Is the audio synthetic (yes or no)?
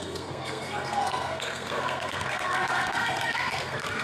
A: yes